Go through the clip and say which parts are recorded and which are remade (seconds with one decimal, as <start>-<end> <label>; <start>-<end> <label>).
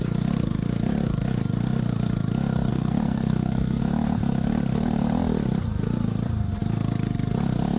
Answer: 0.0-2.7 recorded; 2.7-3.8 remade; 3.8-7.8 recorded